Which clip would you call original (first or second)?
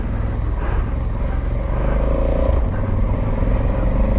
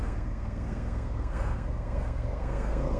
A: first